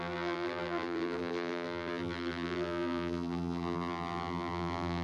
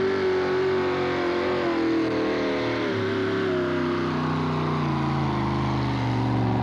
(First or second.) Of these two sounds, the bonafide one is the second